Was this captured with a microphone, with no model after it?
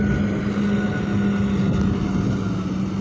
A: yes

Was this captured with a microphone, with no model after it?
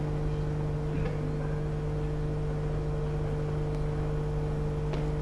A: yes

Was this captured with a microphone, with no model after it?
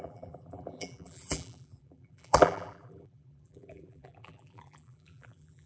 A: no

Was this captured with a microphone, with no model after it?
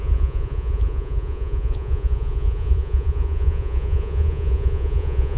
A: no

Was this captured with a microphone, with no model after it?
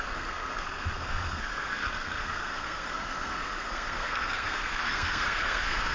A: no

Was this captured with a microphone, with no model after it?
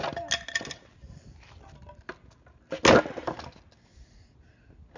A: yes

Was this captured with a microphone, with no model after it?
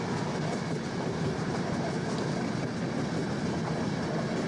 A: yes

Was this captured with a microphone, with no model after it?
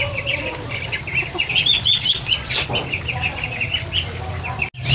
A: yes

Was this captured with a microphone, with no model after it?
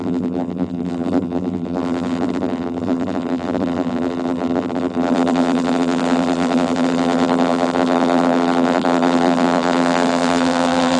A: no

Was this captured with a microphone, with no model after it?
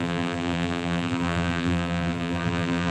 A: no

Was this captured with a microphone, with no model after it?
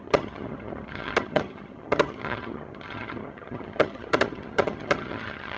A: no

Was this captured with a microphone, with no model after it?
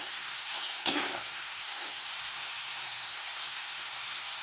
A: no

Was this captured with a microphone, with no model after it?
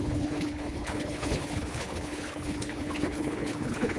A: no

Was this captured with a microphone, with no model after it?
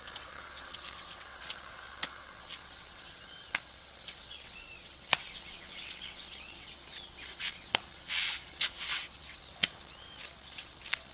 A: no